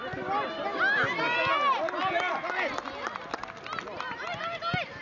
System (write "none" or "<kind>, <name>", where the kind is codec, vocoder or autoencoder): none